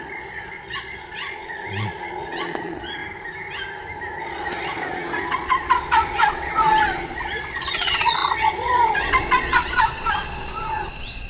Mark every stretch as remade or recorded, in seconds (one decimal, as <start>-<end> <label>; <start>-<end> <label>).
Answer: 0.0-3.0 remade; 3.0-4.2 recorded; 4.2-11.3 remade